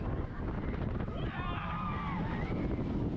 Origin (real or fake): real